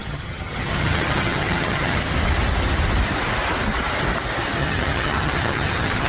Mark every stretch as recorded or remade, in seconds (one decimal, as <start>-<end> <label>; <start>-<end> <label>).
0.0-2.0 remade; 2.0-4.6 recorded; 4.6-6.1 remade